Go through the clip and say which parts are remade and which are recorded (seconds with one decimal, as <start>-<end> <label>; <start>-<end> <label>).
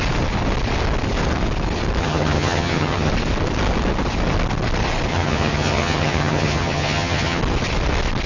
0.0-2.0 recorded; 2.0-3.1 remade; 3.1-5.1 recorded; 5.1-7.4 remade; 7.4-8.3 recorded